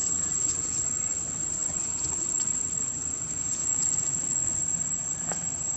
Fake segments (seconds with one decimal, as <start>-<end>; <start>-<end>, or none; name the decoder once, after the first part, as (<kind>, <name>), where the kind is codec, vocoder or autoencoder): 0.0-1.2 (vocoder, WaveNeXt); 1.6-3.2; 3.6-4.6